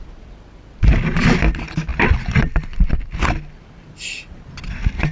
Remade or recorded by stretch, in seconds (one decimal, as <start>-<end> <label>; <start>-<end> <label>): 0.0-1.9 remade; 1.9-5.1 recorded